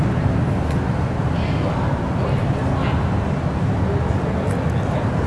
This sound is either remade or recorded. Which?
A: recorded